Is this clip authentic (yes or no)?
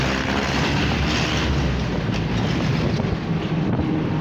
yes